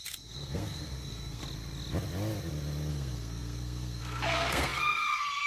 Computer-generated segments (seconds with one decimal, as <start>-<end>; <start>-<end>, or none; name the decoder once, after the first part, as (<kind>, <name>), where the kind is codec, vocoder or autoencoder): 0.0-1.4 (codec, SNAC); 2.9-5.5